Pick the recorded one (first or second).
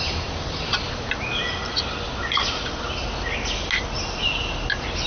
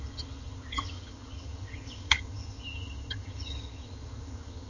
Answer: first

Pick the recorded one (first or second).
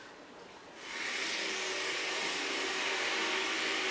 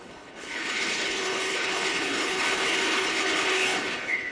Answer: first